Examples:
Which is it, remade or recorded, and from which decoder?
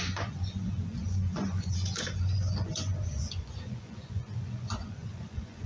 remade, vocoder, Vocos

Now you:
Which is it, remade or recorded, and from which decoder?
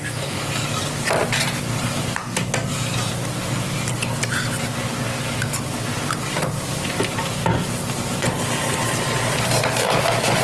recorded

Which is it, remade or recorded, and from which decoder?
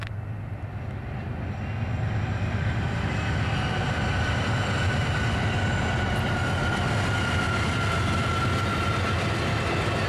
recorded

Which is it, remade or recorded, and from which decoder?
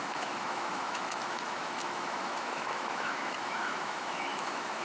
remade, autoencoder, DAC-VAE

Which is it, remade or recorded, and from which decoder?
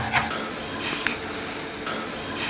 recorded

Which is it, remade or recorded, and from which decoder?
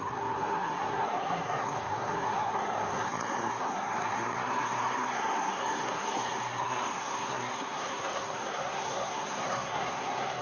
remade, codec, SNAC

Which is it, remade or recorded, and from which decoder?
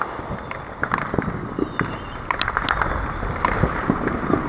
recorded